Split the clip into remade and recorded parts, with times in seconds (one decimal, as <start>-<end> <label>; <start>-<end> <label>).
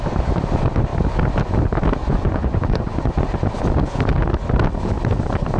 0.0-2.0 recorded; 2.0-3.1 remade; 3.1-5.6 recorded